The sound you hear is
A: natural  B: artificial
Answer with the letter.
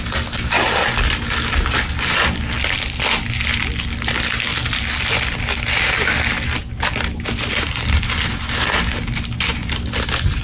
A